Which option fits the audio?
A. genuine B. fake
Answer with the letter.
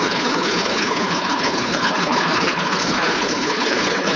B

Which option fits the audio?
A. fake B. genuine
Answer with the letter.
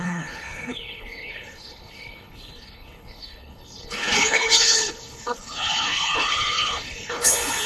A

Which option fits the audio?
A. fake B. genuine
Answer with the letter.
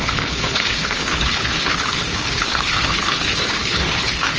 A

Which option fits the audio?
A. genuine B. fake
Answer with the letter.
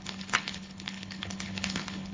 B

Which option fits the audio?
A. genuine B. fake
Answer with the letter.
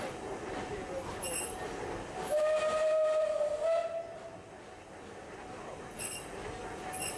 A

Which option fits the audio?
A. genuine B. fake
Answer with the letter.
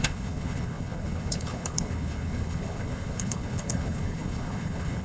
B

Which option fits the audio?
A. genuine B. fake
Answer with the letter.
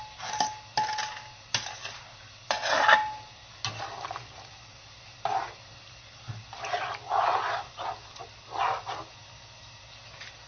A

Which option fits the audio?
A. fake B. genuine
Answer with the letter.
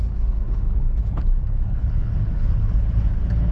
A